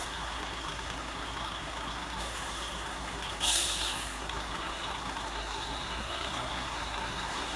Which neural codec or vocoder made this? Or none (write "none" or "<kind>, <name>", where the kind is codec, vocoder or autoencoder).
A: codec, SNAC